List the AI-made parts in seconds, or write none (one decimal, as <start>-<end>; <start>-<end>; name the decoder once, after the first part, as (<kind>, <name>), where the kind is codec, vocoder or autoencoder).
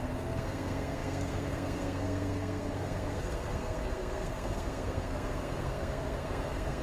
0.0-6.8 (codec, SNAC)